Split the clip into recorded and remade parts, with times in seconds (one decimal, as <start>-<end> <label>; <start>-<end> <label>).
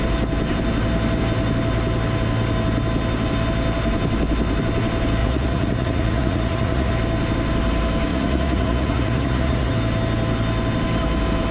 0.0-5.2 recorded; 5.2-6.9 remade; 6.9-8.1 recorded; 8.1-9.7 remade; 9.7-11.5 recorded